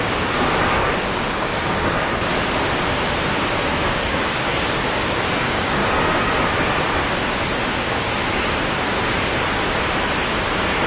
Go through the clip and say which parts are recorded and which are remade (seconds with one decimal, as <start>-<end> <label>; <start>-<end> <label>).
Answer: 0.0-2.1 remade; 2.1-3.7 recorded; 3.7-5.8 remade; 5.8-7.8 recorded; 7.8-8.2 remade; 8.2-10.9 recorded